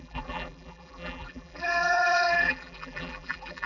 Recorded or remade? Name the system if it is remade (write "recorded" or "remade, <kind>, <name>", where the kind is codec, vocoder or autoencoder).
remade, vocoder, BigVGAN v2